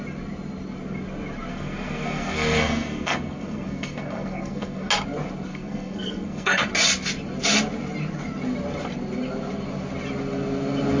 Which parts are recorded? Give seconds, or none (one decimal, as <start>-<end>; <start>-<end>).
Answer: 0.0-1.5; 4.9-5.5; 6.7-11.0

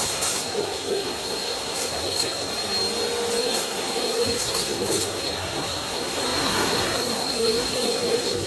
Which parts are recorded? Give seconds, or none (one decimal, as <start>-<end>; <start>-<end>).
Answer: 2.5-3.4

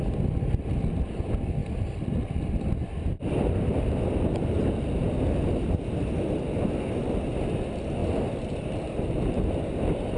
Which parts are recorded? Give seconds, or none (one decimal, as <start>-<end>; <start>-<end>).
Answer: 0.0-10.2

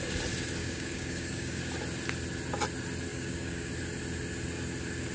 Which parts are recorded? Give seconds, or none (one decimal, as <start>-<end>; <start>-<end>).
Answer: 0.0-0.6; 1.6-3.1; 3.7-5.1

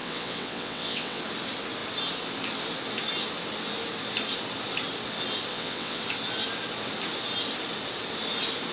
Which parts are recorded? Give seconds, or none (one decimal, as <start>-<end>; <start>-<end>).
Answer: 1.2-5.5; 6.0-8.7